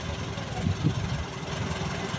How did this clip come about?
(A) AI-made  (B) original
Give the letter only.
B